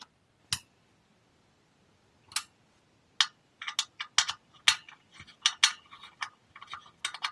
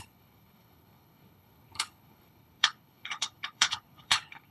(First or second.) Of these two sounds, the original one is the first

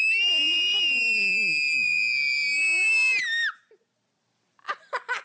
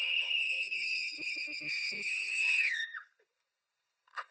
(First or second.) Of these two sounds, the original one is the first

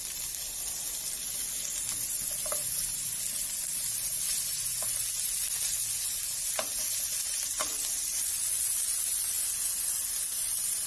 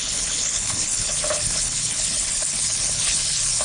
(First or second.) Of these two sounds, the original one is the first